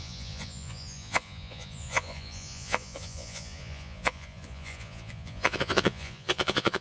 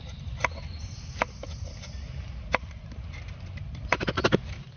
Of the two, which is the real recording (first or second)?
second